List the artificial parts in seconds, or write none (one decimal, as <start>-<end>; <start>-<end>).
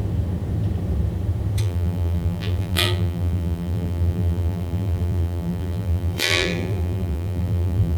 1.6-8.0